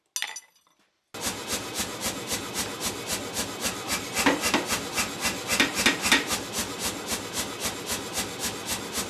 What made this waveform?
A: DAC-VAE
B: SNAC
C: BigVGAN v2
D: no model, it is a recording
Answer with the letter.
D